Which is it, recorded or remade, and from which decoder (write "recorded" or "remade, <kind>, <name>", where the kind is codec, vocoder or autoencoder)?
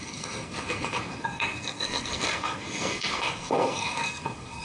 remade, codec, SNAC